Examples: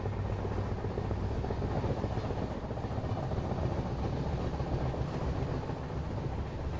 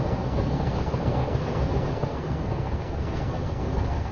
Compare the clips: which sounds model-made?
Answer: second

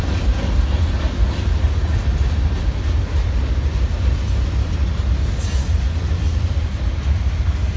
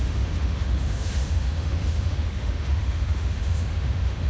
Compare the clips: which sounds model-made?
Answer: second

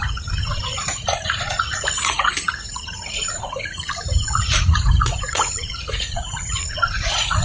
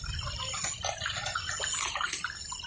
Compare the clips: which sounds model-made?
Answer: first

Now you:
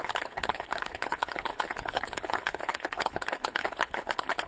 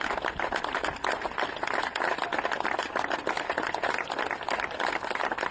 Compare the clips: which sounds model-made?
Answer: first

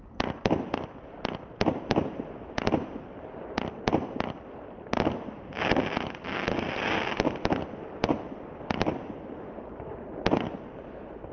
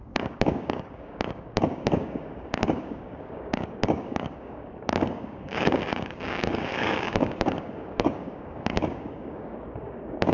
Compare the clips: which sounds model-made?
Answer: second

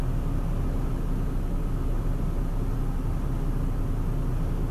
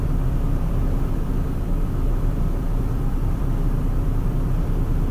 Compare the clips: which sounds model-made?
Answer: second